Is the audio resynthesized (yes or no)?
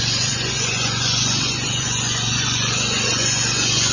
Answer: yes